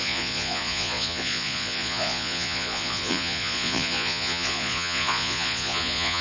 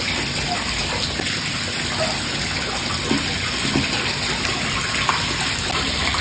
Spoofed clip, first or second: first